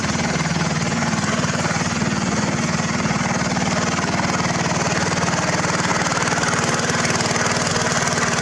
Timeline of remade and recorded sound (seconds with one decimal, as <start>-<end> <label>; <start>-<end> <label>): 0.0-3.2 remade; 3.2-8.4 recorded